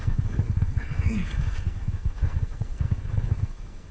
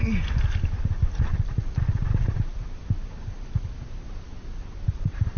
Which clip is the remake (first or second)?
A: first